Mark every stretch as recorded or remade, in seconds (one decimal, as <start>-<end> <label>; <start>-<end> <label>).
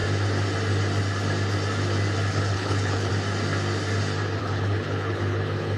0.0-2.3 recorded; 2.3-3.1 remade; 3.1-4.4 recorded; 4.4-5.8 remade